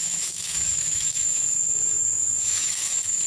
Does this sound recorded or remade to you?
remade